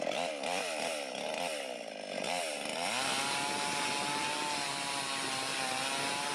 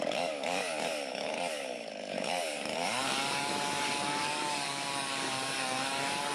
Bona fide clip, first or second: first